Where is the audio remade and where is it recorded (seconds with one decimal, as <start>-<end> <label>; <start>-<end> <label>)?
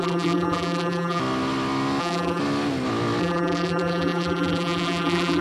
0.0-1.2 remade; 1.2-2.0 recorded; 2.0-2.4 remade; 2.4-3.2 recorded; 3.2-5.4 remade